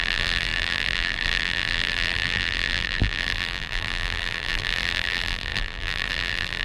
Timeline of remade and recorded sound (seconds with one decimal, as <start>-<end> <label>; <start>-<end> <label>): 0.0-6.6 remade